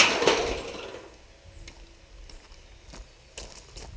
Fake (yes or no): no